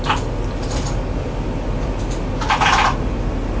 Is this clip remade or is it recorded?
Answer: recorded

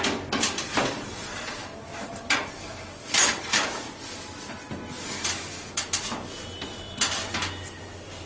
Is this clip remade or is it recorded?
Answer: recorded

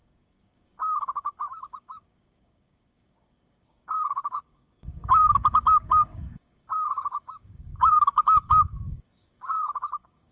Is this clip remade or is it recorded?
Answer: remade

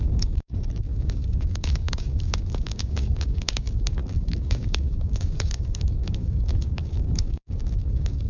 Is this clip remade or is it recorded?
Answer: remade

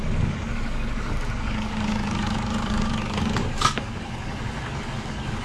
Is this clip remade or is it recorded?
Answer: remade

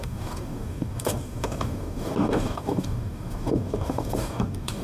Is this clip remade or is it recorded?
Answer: remade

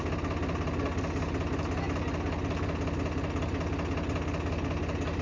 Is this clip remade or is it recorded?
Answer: recorded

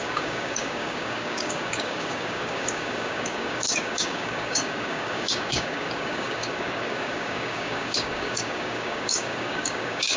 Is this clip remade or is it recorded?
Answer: remade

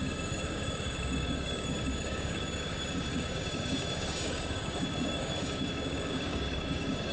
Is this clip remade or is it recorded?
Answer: remade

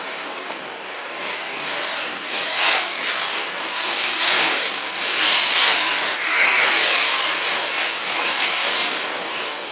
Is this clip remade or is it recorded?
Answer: remade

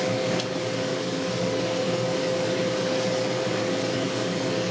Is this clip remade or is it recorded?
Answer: remade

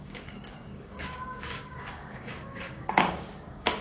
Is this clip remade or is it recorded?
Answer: remade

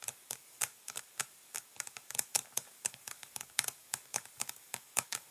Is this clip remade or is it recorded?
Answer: remade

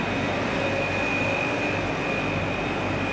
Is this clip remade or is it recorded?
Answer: recorded